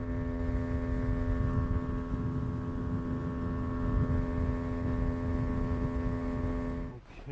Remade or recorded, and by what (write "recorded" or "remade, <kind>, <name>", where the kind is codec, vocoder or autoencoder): recorded